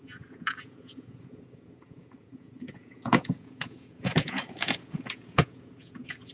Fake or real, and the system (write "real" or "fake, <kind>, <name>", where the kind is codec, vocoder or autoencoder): fake, vocoder, Vocos